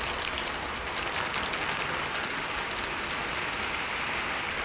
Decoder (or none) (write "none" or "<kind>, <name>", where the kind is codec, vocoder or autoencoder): none